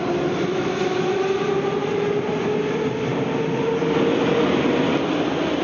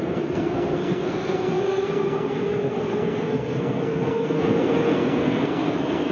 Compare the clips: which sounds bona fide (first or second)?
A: first